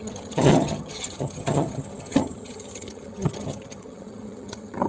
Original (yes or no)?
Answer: no